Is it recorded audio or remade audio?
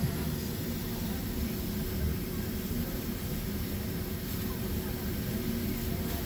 recorded